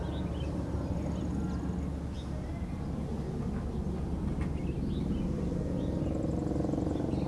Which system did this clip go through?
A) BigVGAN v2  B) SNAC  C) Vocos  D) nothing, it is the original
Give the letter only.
D